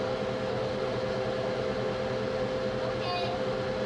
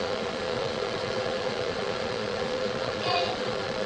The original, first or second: first